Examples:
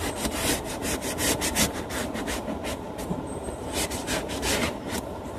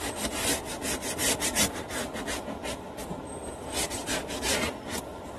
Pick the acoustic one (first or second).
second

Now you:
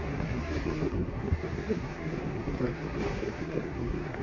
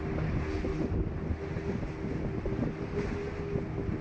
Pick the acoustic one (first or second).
second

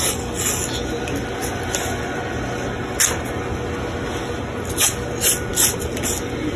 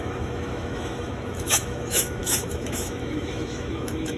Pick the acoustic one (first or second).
first